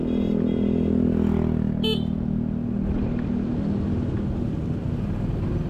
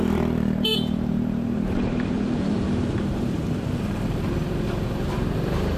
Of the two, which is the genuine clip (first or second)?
first